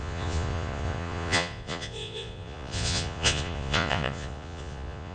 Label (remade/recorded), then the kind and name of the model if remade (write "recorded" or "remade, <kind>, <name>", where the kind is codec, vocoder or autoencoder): remade, vocoder, Vocos